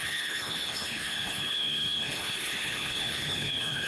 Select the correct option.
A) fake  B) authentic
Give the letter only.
A